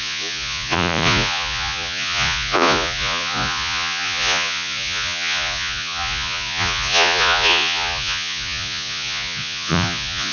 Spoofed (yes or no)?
yes